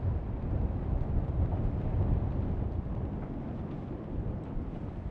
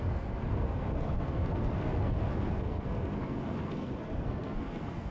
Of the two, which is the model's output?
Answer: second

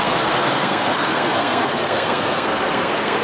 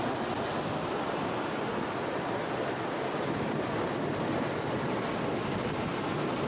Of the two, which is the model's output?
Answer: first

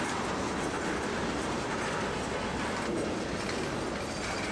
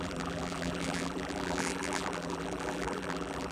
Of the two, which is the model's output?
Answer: second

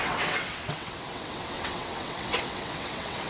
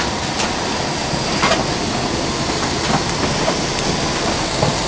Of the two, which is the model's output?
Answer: first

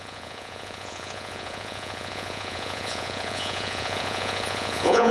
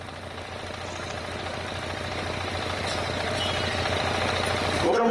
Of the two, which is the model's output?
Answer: first